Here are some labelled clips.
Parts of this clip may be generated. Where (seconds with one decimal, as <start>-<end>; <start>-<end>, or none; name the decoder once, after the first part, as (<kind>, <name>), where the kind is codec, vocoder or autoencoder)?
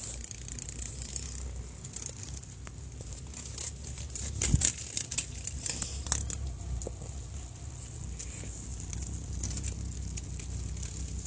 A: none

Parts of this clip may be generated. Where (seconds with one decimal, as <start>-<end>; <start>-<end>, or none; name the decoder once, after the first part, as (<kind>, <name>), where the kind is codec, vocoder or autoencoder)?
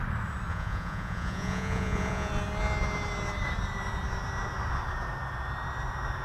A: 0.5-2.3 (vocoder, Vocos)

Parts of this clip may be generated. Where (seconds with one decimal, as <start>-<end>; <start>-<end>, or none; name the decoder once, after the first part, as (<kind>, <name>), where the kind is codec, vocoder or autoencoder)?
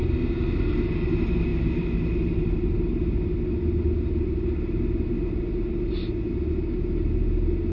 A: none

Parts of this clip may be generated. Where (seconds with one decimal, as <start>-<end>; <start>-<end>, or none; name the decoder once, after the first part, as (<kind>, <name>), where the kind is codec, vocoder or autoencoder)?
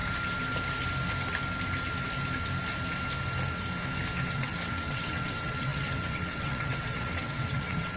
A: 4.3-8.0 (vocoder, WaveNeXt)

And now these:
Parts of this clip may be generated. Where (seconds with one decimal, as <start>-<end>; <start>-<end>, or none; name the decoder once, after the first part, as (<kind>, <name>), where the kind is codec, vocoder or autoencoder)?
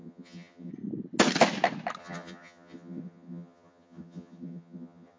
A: 0.0-0.7 (vocoder, HiFi-GAN); 2.0-5.2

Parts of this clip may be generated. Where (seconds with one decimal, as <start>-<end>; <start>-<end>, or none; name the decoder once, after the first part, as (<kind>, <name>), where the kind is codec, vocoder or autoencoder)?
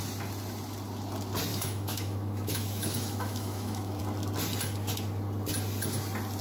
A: 1.5-4.0 (autoencoder, DAC-VAE)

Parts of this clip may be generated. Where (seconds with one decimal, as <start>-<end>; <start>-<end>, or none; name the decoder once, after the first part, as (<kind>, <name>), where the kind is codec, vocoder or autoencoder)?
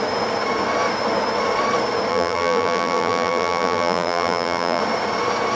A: 2.1-4.8 (vocoder, BigVGAN v2)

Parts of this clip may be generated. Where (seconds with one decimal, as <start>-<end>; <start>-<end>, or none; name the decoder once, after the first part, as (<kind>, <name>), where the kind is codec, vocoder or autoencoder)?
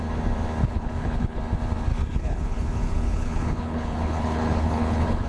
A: 0.6-1.4 (codec, HILCodec); 1.9-5.3